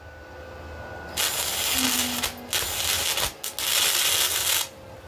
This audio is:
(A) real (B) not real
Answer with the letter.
A